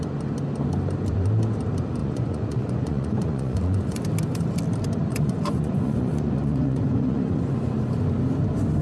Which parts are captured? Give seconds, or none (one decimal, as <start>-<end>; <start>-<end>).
0.0-2.0; 4.0-5.1; 7.6-8.8